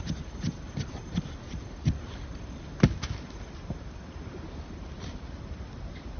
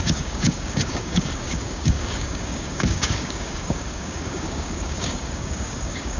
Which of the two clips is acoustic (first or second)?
first